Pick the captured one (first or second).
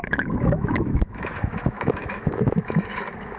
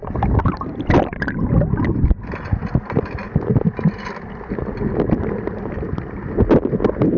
second